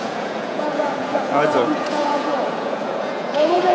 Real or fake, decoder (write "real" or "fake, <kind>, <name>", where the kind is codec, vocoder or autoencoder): fake, vocoder, Vocos